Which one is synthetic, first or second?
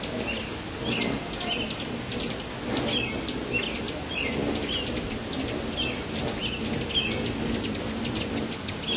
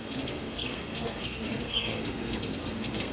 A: second